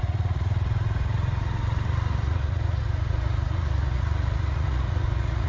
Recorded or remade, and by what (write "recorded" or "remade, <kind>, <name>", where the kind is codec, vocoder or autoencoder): remade, vocoder, Vocos